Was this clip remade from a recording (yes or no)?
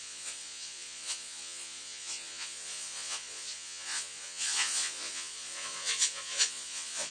yes